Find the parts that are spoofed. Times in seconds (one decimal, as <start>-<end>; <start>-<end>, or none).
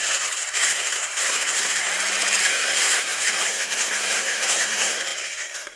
0.0-1.9; 2.4-5.8